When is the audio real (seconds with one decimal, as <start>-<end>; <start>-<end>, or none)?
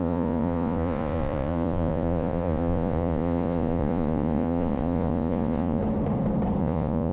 5.8-6.6